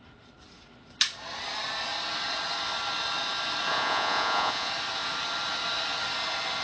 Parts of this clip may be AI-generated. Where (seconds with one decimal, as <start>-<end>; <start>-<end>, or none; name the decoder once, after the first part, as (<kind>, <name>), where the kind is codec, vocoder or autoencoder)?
3.7-4.7 (vocoder, Vocos)